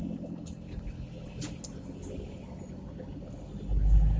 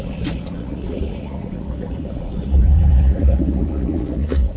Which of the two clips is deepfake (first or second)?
second